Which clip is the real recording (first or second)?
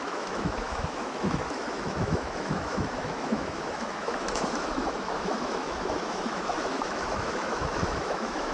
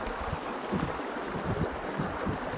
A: second